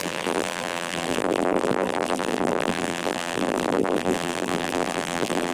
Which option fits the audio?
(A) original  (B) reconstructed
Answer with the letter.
B